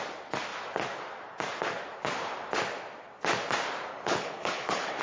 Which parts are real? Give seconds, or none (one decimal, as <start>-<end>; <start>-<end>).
0.0-3.9